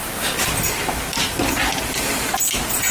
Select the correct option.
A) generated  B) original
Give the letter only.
B